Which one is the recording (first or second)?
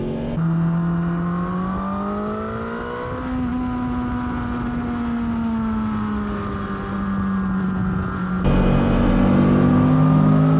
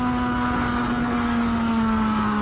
first